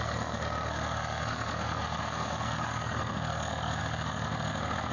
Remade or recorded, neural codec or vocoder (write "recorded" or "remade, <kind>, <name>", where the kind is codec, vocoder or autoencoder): remade, codec, SNAC